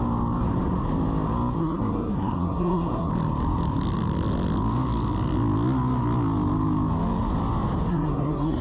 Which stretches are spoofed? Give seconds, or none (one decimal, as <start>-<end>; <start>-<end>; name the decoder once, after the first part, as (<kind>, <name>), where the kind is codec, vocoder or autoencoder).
1.6-3.1 (codec, SNAC); 7.9-8.6